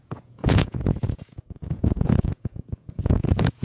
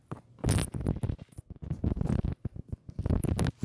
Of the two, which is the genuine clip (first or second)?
second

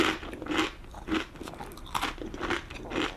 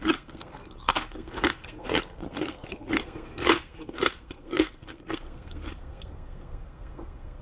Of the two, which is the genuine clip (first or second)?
first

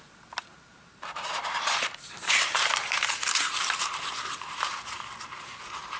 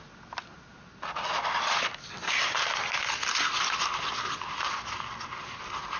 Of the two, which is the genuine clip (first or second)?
second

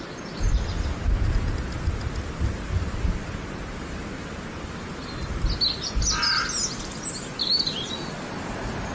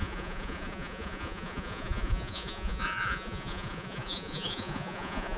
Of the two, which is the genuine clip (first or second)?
first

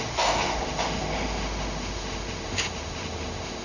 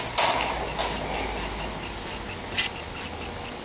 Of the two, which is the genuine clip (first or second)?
second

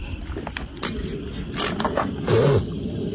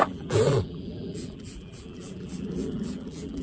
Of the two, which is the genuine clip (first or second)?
first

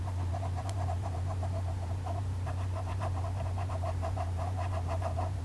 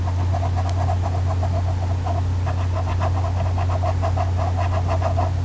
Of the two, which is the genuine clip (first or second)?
second